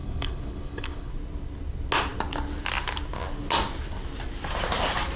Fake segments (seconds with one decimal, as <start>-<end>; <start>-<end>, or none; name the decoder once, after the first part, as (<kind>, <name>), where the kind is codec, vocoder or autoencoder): 0.0-1.1 (codec, HILCodec)